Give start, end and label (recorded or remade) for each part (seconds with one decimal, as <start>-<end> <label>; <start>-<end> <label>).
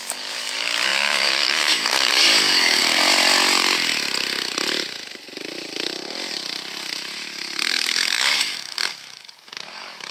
0.0-2.8 remade; 2.8-7.7 recorded; 7.7-10.1 remade